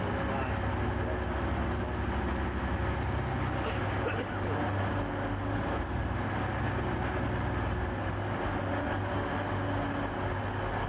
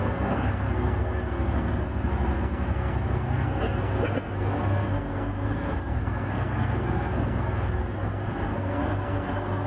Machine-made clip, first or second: second